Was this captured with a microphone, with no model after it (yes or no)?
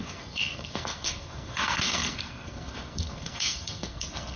no